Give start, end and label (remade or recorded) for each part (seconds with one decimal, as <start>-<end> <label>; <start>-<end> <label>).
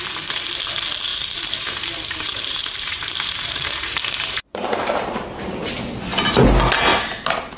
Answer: 0.0-1.1 recorded; 1.1-5.7 remade; 5.7-6.9 recorded; 6.9-7.6 remade